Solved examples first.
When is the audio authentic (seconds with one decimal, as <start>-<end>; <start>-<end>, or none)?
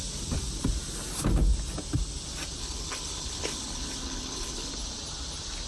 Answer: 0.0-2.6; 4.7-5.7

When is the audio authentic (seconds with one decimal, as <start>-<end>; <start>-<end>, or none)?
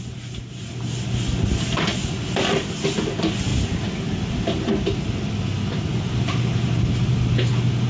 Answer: 0.0-7.9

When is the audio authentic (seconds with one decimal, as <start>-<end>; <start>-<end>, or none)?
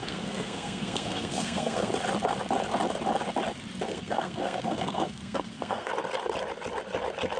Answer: 1.9-3.9; 5.9-7.4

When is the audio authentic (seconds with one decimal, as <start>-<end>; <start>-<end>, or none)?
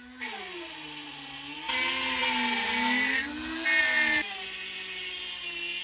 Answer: 0.0-5.8